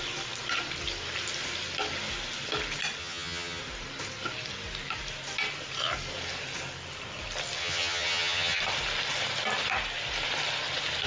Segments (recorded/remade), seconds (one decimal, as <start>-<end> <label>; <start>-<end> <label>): 0.0-3.0 recorded; 3.0-3.6 remade; 3.6-7.6 recorded; 7.6-8.6 remade; 8.6-11.1 recorded